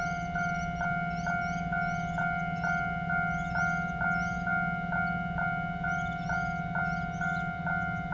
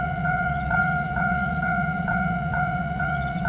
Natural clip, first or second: first